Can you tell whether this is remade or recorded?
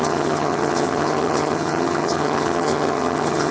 remade